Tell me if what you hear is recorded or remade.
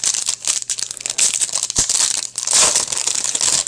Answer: recorded